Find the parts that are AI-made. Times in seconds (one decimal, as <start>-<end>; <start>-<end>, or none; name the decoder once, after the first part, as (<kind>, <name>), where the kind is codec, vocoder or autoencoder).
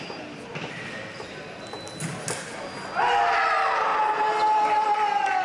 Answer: 3.9-4.9 (vocoder, BigVGAN v2)